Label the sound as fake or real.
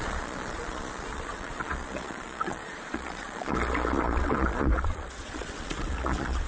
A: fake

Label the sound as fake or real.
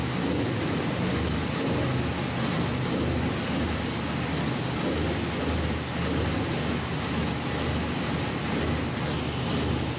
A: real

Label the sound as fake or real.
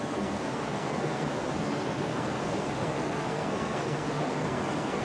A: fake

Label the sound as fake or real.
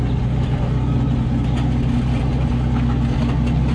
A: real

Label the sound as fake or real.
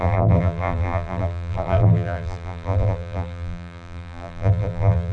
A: fake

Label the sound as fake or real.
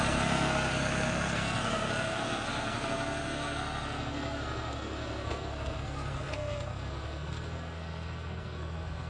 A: fake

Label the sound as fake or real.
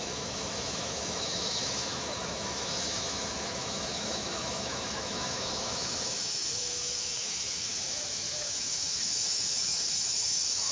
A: fake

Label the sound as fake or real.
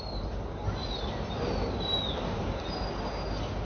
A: real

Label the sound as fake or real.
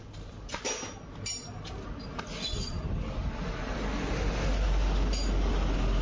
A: real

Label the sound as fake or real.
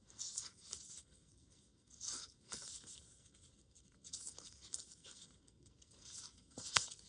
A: fake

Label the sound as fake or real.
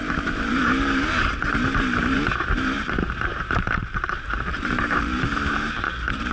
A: fake